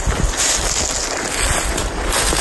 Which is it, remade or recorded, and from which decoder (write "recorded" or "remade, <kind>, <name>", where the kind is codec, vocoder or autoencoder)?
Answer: recorded